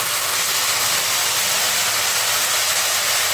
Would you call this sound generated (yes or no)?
no